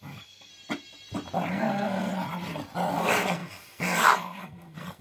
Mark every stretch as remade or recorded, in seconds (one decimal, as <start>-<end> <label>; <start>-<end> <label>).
0.0-0.5 remade; 0.5-1.5 recorded; 1.5-2.1 remade; 2.1-2.9 recorded; 2.9-5.0 remade